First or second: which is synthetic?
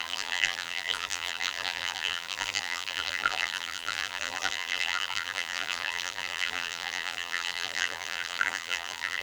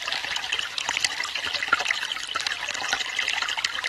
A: first